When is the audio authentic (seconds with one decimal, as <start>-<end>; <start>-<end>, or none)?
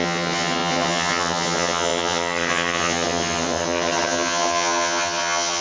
none